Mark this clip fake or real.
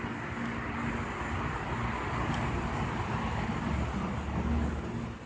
real